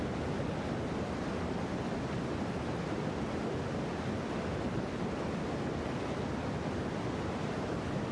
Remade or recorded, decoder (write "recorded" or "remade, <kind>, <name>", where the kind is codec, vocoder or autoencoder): recorded